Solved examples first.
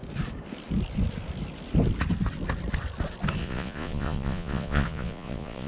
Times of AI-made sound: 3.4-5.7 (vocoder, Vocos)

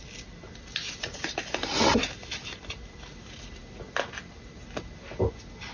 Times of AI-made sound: none

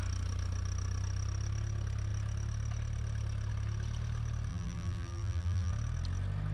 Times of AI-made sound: 4.5-5.7 (vocoder, BigVGAN v2)

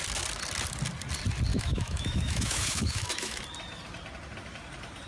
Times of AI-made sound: 1.5-3.4 (autoencoder, DAC-VAE)

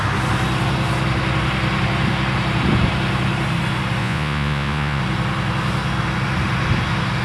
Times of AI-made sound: 4.0-5.0 (vocoder, Vocos)

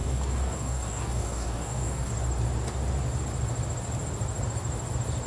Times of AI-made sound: 0.0-2.1 (codec, DAC)

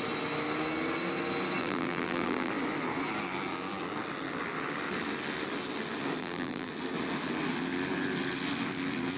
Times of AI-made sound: 1.6-2.5 (vocoder, BigVGAN v2); 6.2-6.7